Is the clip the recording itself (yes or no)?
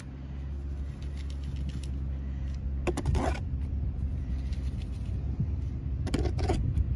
yes